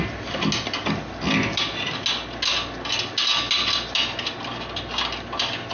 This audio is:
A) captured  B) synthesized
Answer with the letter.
A